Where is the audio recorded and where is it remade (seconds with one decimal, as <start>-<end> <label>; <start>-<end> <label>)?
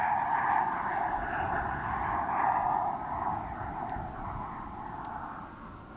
0.0-6.0 recorded